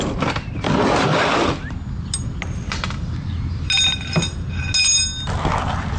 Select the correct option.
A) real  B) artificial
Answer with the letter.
A